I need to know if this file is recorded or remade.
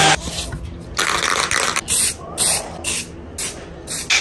recorded